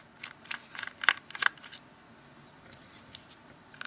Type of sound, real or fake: real